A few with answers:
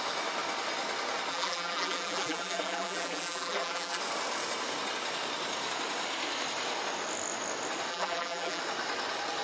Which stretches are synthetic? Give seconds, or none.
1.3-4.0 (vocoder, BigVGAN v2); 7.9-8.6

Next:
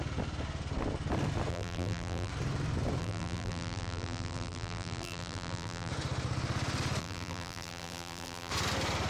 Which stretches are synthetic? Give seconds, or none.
1.5-2.3 (vocoder, BigVGAN v2); 3.0-5.9; 7.0-8.5

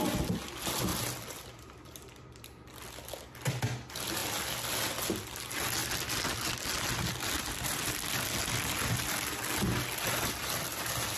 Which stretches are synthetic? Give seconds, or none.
0.9-3.6 (vocoder, BigVGAN v2)

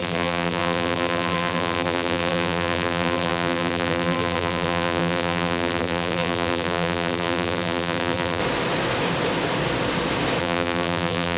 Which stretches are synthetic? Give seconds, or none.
0.0-8.4 (vocoder, BigVGAN v2); 10.4-11.4

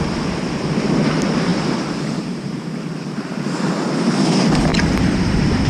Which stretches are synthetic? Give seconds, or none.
1.5-2.6 (vocoder, BigVGAN v2); 4.7-5.7